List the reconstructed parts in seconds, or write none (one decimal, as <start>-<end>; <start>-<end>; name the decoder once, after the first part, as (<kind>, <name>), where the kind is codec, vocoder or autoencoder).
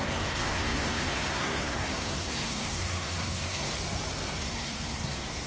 0.0-3.7 (codec, SNAC); 4.4-5.5